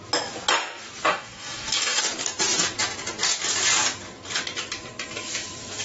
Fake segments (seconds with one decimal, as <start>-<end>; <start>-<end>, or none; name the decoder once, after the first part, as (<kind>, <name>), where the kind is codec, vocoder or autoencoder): 1.1-2.0 (codec, DAC)